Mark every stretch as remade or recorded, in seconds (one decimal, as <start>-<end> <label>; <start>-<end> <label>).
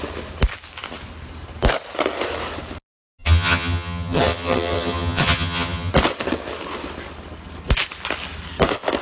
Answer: 0.0-3.2 recorded; 3.2-5.9 remade; 5.9-9.0 recorded